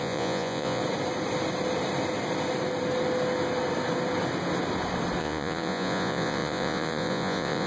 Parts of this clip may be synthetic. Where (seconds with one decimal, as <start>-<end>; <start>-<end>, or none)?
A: 0.0-0.8; 5.2-7.7